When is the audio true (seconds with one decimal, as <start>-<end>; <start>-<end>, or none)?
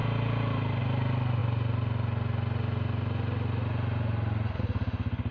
0.0-5.3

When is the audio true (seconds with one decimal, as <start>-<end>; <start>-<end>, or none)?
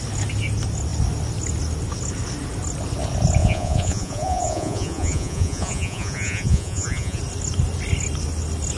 0.0-3.4; 7.2-8.8